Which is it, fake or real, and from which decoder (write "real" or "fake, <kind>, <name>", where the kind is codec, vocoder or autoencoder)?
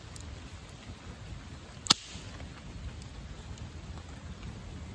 real